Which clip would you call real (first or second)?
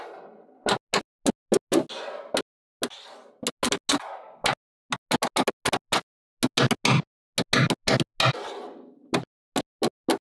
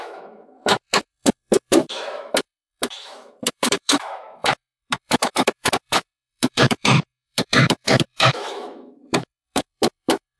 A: first